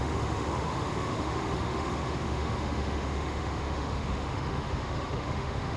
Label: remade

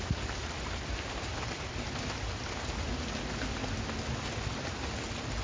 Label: recorded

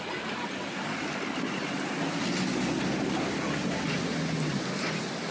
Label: recorded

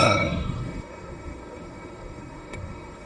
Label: remade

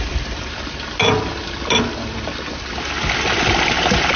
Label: recorded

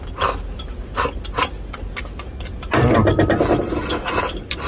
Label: recorded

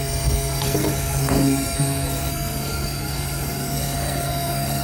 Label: remade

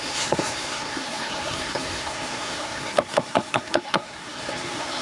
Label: remade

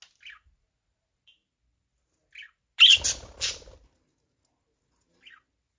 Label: recorded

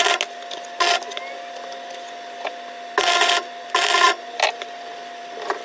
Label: recorded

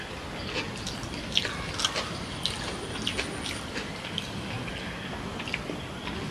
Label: recorded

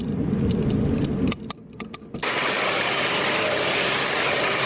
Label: recorded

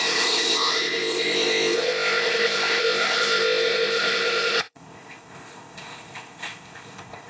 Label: remade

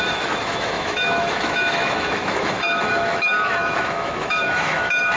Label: remade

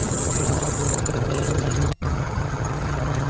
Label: remade